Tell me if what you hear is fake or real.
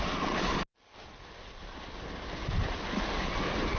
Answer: real